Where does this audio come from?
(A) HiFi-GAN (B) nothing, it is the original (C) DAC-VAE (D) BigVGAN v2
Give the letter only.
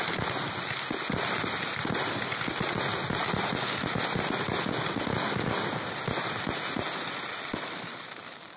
B